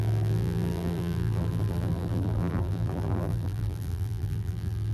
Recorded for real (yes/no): no